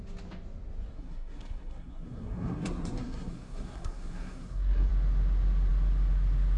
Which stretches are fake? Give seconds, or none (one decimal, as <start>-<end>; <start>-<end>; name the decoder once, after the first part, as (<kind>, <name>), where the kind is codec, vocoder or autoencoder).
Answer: 0.9-4.9 (codec, SNAC)